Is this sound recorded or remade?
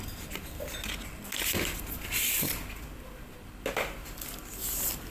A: recorded